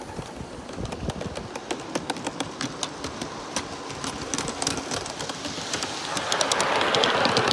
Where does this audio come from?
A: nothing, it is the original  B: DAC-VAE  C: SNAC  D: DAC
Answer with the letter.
A